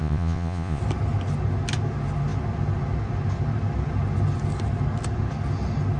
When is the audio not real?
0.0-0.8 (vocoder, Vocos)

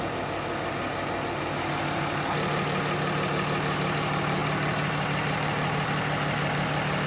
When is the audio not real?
none

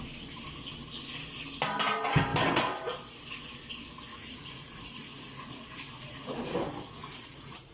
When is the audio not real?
4.1-6.4 (vocoder, Vocos); 7.0-7.7